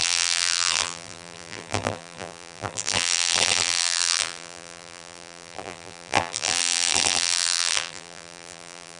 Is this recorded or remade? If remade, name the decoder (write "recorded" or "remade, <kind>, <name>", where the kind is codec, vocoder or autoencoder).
remade, vocoder, BigVGAN v2